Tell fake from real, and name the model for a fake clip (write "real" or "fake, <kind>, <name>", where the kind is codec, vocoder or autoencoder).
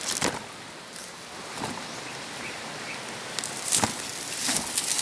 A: real